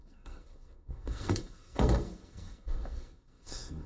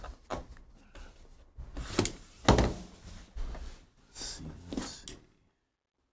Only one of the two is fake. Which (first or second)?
first